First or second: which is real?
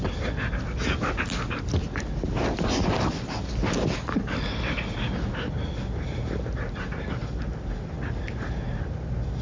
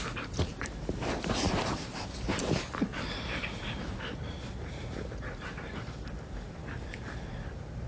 first